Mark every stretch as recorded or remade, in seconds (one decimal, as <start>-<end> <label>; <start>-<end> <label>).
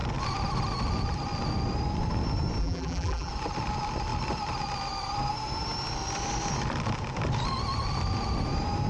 0.0-2.6 recorded; 2.6-3.3 remade; 3.3-8.9 recorded